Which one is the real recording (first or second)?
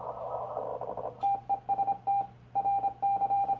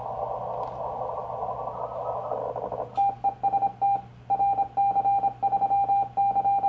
second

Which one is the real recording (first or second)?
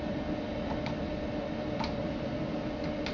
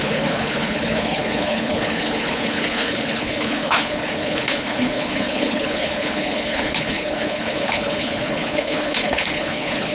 first